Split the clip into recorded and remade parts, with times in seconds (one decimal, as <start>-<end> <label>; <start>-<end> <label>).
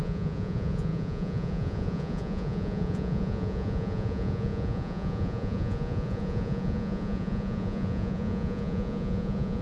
0.0-9.6 remade